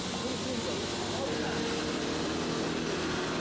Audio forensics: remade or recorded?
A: recorded